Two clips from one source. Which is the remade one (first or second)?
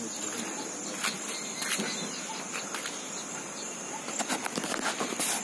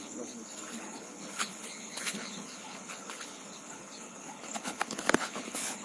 second